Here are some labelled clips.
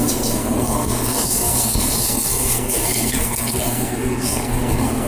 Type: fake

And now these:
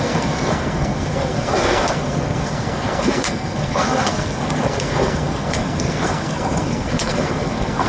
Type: fake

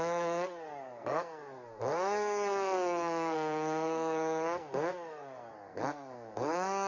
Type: fake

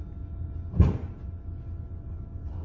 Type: real